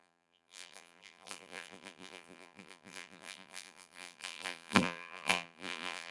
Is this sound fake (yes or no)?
yes